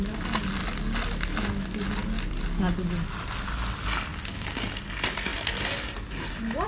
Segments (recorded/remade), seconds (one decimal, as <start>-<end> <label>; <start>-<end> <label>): 0.0-4.1 recorded; 4.1-4.7 remade; 4.7-6.7 recorded